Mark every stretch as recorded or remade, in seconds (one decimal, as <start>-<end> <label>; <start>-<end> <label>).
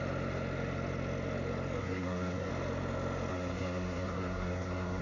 0.0-1.8 recorded; 1.8-2.5 remade; 2.5-3.3 recorded; 3.3-5.0 remade